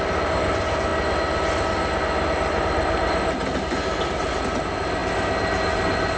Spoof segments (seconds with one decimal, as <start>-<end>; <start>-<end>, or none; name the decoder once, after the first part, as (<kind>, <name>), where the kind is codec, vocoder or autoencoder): none